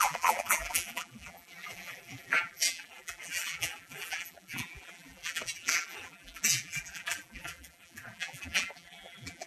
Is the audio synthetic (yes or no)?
yes